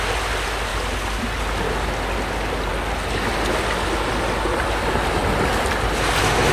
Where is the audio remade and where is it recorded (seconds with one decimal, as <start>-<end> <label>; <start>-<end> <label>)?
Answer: 0.0-6.5 recorded